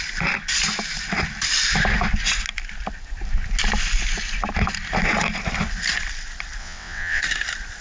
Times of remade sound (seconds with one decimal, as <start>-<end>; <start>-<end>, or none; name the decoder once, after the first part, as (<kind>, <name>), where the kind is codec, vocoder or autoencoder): 6.6-7.2 (vocoder, WaveNeXt)